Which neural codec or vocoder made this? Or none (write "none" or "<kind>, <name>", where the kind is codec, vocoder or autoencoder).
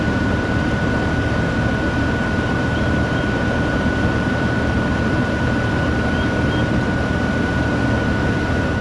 vocoder, BigVGAN v2